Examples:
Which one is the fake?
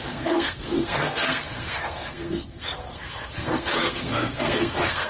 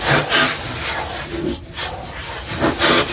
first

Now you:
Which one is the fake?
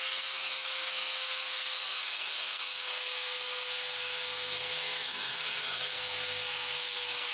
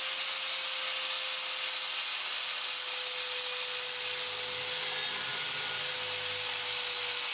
first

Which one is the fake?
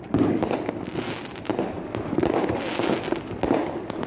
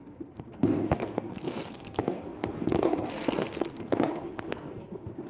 second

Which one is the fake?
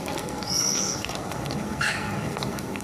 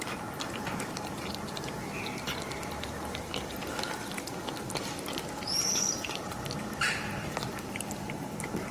first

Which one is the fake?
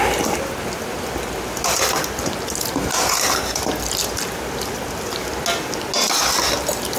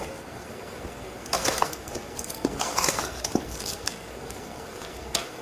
second